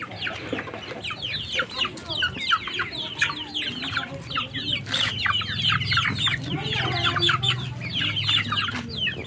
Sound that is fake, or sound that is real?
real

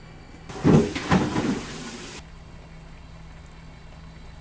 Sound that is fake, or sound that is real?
real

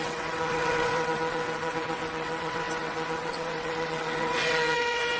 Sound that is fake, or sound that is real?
fake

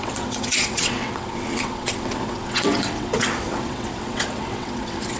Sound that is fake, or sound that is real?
fake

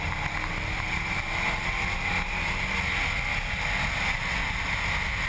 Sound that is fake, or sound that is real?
real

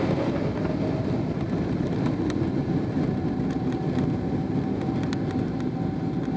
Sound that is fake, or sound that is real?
real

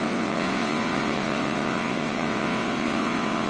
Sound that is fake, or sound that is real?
fake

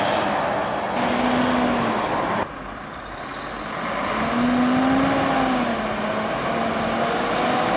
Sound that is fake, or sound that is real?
real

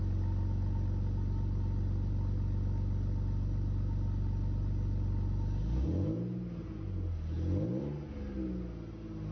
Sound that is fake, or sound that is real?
real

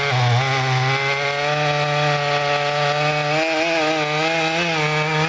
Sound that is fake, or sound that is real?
real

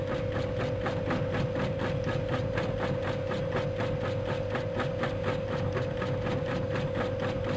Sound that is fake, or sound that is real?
real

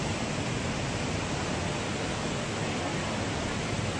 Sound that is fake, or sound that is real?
real